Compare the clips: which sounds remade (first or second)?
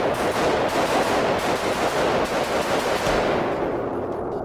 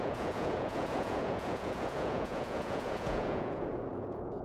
second